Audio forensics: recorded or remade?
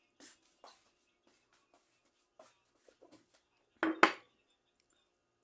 recorded